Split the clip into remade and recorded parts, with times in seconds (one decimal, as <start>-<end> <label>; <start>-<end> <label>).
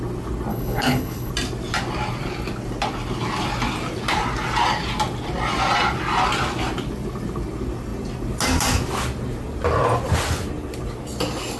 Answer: 0.0-0.5 recorded; 0.5-1.3 remade; 1.3-11.6 recorded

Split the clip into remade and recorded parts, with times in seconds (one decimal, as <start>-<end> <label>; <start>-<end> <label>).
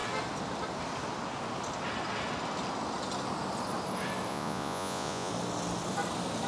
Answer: 0.0-4.3 recorded; 4.3-5.3 remade; 5.3-6.5 recorded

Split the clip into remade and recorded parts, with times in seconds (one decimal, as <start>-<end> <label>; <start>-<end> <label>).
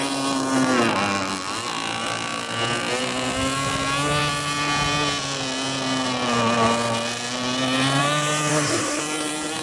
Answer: 0.0-8.5 recorded; 8.5-9.0 remade; 9.0-9.6 recorded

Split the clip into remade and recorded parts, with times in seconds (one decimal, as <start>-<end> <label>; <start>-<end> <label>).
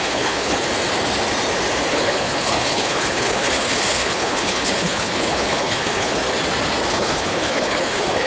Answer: 0.0-0.7 remade; 0.7-1.9 recorded; 1.9-6.2 remade; 6.2-6.9 recorded; 6.9-8.3 remade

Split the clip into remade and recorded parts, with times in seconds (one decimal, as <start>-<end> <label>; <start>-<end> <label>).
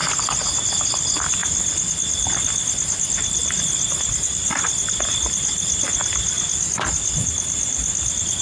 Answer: 0.0-8.4 recorded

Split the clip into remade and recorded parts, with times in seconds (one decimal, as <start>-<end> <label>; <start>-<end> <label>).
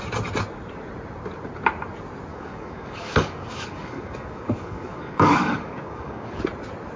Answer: 0.0-2.3 recorded; 2.3-6.4 remade; 6.4-7.0 recorded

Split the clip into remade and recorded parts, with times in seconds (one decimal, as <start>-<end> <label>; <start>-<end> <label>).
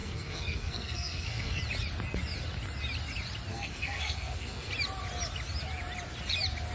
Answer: 0.0-1.6 remade; 1.6-3.5 recorded; 3.5-4.7 remade; 4.7-6.7 recorded